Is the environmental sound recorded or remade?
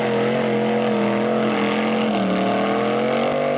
recorded